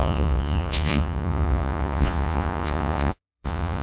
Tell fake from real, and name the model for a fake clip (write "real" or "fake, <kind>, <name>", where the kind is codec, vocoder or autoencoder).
fake, vocoder, Vocos